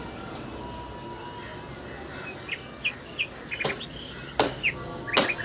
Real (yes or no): yes